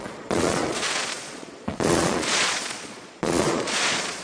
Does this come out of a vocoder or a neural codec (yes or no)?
yes